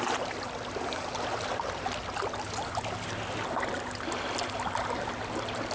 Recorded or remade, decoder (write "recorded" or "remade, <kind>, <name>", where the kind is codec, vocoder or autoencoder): recorded